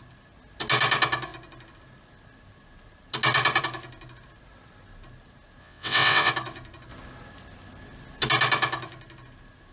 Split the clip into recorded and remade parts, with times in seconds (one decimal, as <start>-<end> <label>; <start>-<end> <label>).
0.0-5.6 recorded; 5.6-6.3 remade; 6.3-9.7 recorded